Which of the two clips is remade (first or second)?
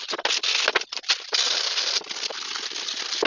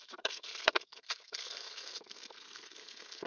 second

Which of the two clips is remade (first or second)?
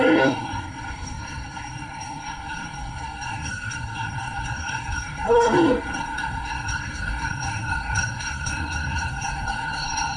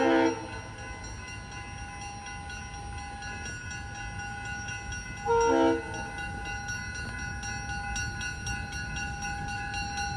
first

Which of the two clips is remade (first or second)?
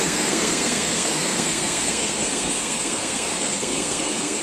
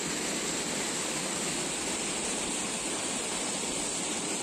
first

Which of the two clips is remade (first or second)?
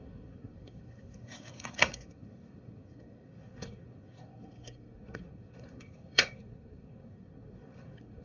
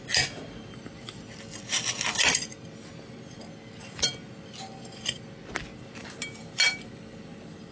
first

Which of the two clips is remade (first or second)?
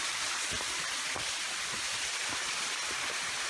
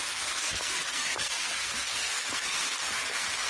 second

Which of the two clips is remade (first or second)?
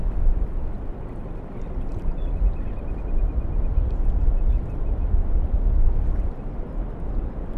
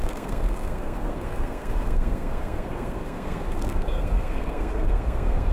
second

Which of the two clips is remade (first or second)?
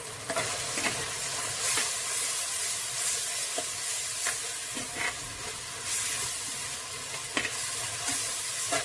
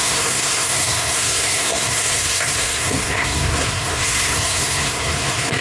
second